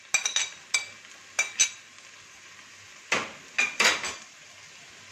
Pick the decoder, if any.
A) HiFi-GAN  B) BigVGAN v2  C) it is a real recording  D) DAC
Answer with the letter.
C